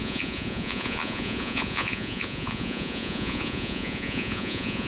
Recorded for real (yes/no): no